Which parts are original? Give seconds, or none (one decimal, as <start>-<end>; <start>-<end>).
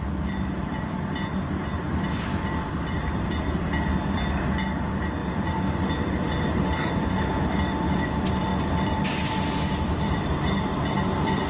8.5-9.8